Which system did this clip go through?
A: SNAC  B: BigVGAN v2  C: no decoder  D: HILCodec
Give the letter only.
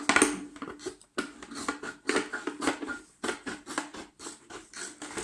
C